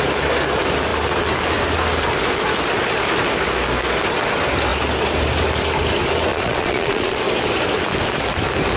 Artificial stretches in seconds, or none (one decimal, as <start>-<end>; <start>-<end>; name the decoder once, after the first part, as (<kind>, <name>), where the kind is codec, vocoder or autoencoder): 6.3-7.2 (vocoder, Vocos)